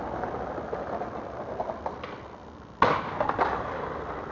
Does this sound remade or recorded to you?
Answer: recorded